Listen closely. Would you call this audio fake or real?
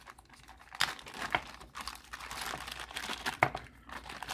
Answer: real